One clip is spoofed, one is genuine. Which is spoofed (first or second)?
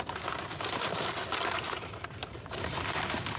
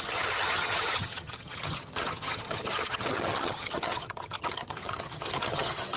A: second